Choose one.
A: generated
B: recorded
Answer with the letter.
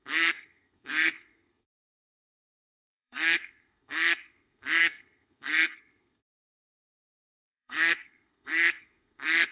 A